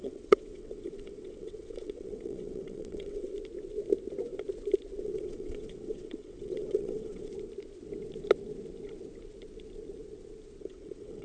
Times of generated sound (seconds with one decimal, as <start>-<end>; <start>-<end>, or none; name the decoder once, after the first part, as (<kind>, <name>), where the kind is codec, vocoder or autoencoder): 0.0-3.3 (vocoder, WaveNeXt); 5.0-7.3; 10.6-11.2